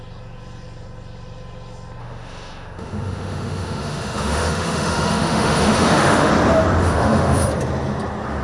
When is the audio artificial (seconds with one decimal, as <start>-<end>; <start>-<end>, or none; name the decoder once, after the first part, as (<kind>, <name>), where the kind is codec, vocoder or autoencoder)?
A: 2.0-6.3 (autoencoder, DAC-VAE); 6.8-7.5